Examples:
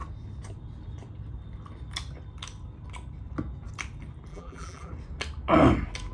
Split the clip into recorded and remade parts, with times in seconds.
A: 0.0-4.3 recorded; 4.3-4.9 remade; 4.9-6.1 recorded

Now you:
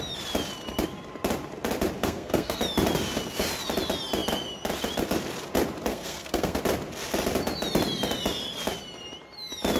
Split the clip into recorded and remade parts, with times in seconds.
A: 0.0-2.0 recorded; 2.0-2.6 remade; 2.6-5.9 recorded; 5.9-6.6 remade; 6.6-9.8 recorded

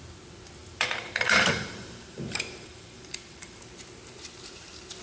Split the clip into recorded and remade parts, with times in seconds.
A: 0.0-0.6 recorded; 0.6-3.6 remade; 3.6-5.0 recorded

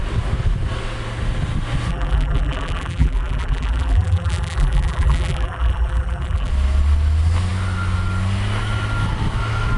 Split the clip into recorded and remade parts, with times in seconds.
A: 0.0-1.9 recorded; 1.9-6.5 remade; 6.5-9.8 recorded